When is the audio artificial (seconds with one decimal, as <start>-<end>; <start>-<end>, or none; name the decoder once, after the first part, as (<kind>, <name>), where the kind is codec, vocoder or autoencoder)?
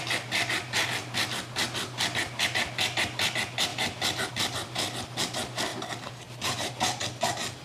5.7-6.7 (vocoder, BigVGAN v2)